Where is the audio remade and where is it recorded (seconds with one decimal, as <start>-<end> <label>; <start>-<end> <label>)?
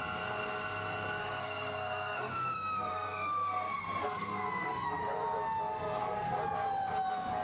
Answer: 0.0-1.2 recorded; 1.2-5.0 remade; 5.0-5.7 recorded; 5.7-6.4 remade; 6.4-7.4 recorded